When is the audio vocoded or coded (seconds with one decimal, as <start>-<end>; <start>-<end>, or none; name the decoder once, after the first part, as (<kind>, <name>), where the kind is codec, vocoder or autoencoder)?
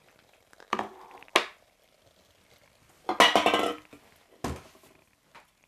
0.0-0.9 (vocoder, BigVGAN v2)